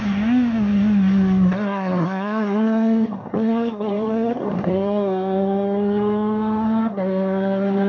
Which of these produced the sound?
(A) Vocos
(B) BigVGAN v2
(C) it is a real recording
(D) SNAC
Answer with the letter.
D